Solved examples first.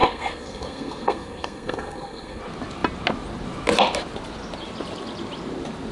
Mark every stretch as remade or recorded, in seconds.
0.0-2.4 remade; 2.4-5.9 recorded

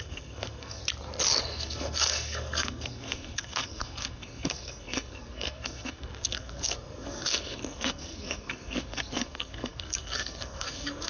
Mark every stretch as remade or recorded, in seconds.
0.0-0.8 remade; 0.8-1.4 recorded; 1.4-11.1 remade

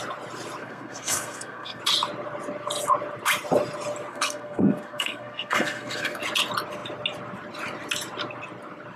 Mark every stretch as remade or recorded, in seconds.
0.0-0.6 recorded; 0.6-1.8 remade; 1.8-4.1 recorded; 4.1-6.2 remade; 6.2-9.0 recorded

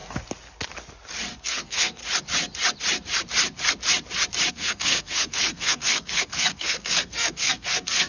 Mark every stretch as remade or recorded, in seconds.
0.0-1.4 recorded; 1.4-2.0 remade; 2.0-4.5 recorded; 4.5-8.1 remade

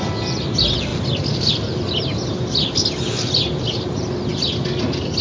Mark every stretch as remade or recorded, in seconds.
0.0-5.2 recorded

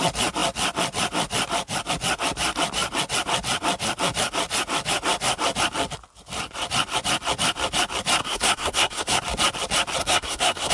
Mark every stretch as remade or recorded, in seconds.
0.0-8.2 recorded; 8.2-9.2 remade; 9.2-10.0 recorded; 10.0-10.7 remade

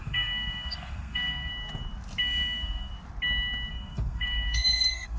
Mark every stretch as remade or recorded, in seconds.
0.0-1.5 remade; 1.5-2.2 recorded; 2.2-2.9 remade; 2.9-3.7 recorded; 3.7-5.2 remade

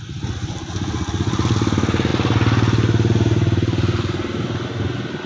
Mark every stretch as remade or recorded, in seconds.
0.0-5.3 recorded